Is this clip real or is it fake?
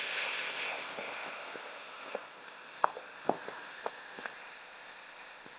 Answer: fake